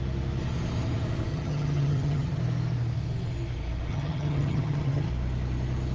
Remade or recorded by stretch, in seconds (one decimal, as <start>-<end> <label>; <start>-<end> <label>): 0.0-1.3 recorded; 1.3-2.4 remade; 2.4-3.9 recorded; 3.9-5.1 remade; 5.1-5.9 recorded